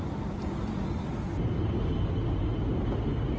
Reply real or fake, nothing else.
real